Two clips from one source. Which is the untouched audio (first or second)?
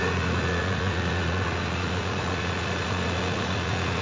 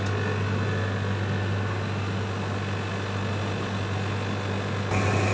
second